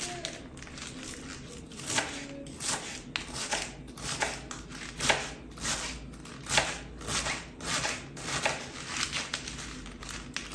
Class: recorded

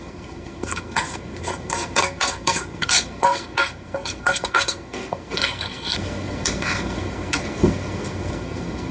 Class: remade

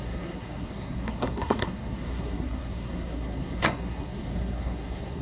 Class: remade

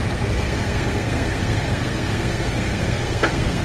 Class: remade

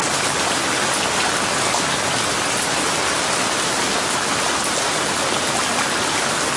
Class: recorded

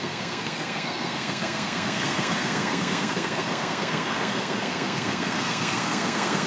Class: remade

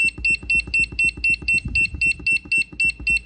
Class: recorded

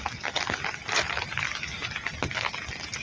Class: recorded